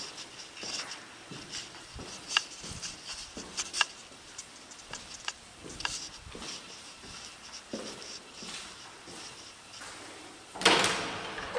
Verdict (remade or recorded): recorded